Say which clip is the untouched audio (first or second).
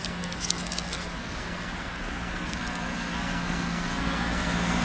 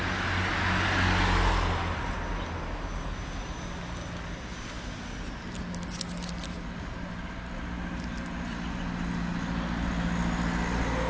second